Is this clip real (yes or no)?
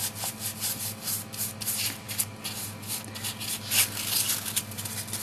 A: yes